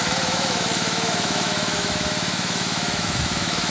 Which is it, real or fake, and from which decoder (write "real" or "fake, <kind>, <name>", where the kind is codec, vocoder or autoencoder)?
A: fake, autoencoder, DAC-VAE